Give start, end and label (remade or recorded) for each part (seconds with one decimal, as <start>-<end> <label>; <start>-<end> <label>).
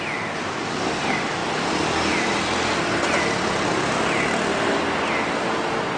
0.0-6.0 recorded